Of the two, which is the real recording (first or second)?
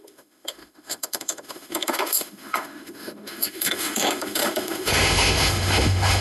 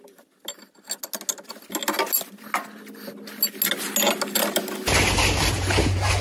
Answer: second